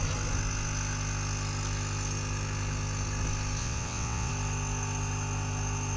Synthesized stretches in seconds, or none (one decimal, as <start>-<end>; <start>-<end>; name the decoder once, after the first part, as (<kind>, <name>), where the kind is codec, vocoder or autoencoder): 3.6-4.3 (vocoder, WaveNeXt)